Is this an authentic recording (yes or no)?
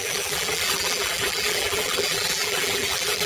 no